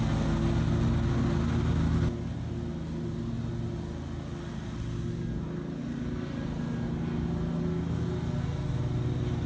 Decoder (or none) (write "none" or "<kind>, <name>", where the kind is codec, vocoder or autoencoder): none